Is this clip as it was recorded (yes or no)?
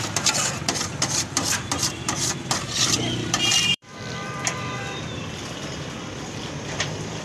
no